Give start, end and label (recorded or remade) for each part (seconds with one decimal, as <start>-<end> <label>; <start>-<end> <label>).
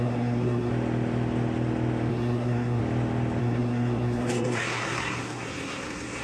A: 0.0-0.7 remade; 0.7-2.1 recorded; 2.1-2.8 remade; 2.8-3.4 recorded; 3.4-6.2 remade